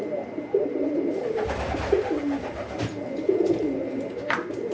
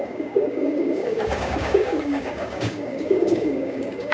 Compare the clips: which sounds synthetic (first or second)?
second